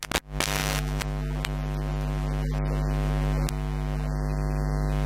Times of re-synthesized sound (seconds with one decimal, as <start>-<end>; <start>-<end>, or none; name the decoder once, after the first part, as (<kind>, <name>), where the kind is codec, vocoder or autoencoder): none